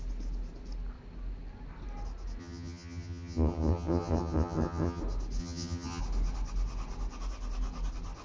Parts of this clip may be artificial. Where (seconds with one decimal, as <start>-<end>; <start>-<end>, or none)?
2.4-5.0; 5.4-6.0